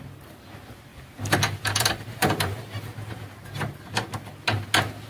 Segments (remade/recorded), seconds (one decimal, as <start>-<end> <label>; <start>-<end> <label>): 0.0-0.9 recorded; 0.9-3.2 remade; 3.2-5.1 recorded